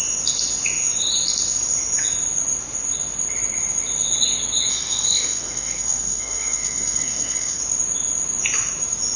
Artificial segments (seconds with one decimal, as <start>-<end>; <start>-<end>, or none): 4.7-7.6